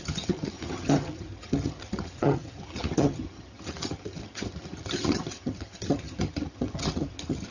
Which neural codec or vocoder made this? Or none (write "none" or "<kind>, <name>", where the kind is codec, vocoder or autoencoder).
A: vocoder, HiFi-GAN